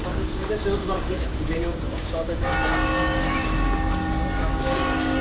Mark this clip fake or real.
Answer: fake